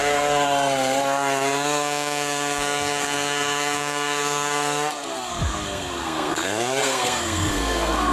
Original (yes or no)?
no